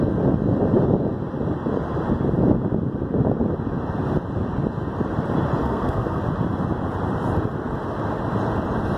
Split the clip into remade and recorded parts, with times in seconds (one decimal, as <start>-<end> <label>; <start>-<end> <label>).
0.0-5.6 recorded; 5.6-6.2 remade; 6.2-9.0 recorded